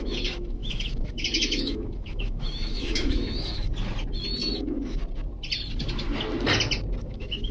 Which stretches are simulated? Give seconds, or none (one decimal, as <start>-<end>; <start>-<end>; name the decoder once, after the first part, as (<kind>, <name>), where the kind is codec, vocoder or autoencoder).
0.0-3.7 (autoencoder, DAC-VAE); 4.6-5.0; 7.0-7.5